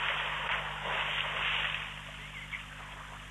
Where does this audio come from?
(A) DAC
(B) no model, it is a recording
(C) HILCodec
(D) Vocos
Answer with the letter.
B